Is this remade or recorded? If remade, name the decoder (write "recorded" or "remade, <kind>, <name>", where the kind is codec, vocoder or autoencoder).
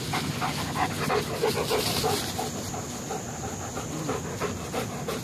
recorded